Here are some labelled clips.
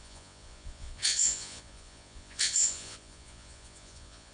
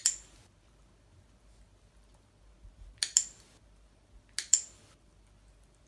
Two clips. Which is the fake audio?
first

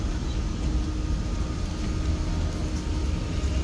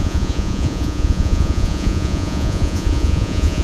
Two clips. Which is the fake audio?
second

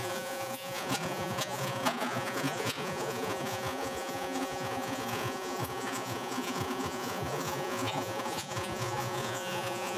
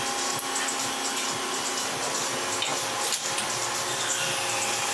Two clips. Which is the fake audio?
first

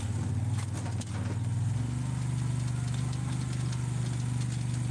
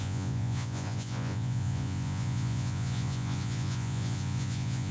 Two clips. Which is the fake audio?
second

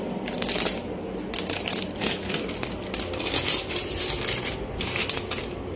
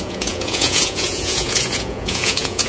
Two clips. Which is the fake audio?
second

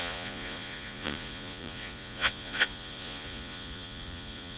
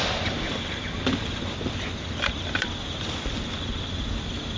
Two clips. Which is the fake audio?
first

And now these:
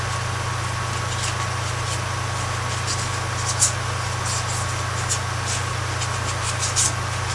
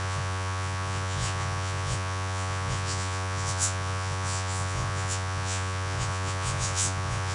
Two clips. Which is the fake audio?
second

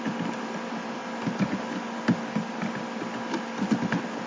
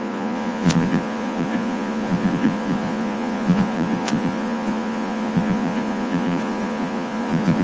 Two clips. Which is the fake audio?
second